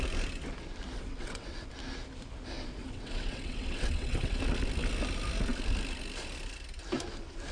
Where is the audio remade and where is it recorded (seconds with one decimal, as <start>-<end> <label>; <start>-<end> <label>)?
0.0-0.9 recorded; 0.9-1.7 remade; 1.7-2.8 recorded; 2.8-4.4 remade; 4.4-7.5 recorded